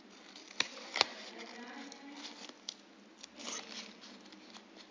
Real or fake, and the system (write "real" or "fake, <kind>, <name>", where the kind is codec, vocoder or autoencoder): real